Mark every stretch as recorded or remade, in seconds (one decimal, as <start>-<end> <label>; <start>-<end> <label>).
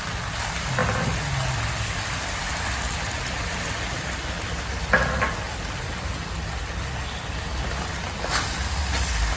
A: 0.0-9.4 recorded